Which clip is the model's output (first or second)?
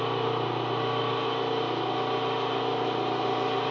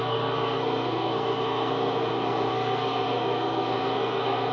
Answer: second